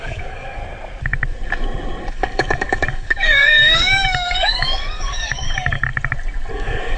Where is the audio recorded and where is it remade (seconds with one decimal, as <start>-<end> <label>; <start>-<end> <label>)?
0.0-0.6 remade; 0.6-2.1 recorded; 2.1-5.9 remade; 5.9-6.5 recorded; 6.5-7.0 remade